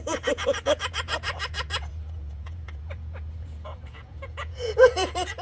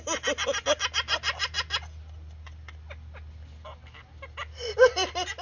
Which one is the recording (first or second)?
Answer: second